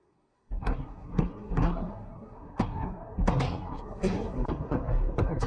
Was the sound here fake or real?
fake